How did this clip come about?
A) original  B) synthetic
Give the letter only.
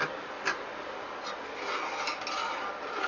A